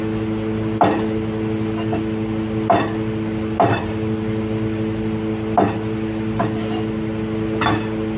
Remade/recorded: recorded